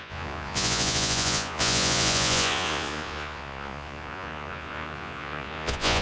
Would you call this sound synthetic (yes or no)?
yes